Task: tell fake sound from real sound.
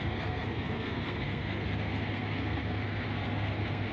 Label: fake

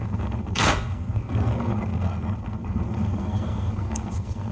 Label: fake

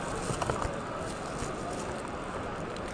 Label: real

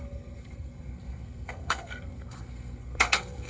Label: fake